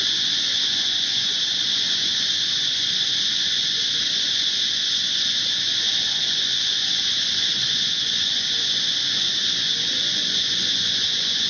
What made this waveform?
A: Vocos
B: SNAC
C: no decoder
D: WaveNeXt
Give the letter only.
A